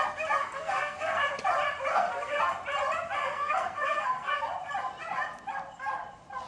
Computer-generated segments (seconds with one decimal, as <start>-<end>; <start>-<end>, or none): 0.4-1.3; 1.9-2.4; 3.2-4.4